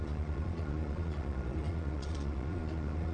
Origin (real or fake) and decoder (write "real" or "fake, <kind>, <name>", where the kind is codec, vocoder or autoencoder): fake, vocoder, Vocos